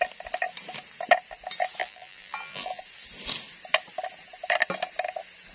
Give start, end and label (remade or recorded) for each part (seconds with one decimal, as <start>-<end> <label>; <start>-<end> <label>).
0.0-1.8 recorded; 1.8-2.8 remade; 2.8-5.5 recorded